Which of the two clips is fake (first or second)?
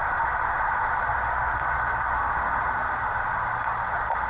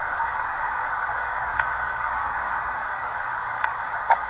second